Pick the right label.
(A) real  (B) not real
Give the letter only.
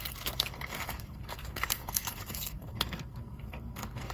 B